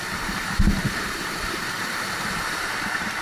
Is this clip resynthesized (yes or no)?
no